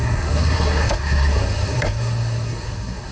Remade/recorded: remade